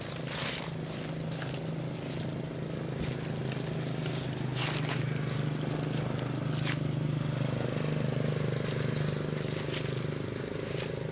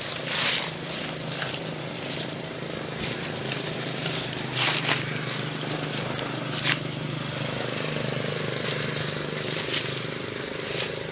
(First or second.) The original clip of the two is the first